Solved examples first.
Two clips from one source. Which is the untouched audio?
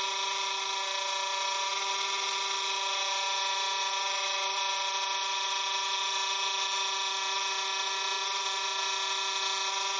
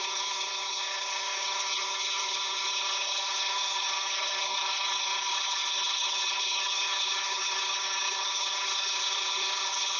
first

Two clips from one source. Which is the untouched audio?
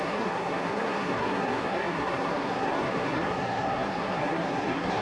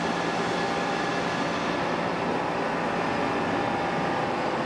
second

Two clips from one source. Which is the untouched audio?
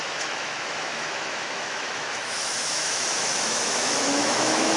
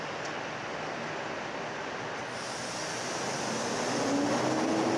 second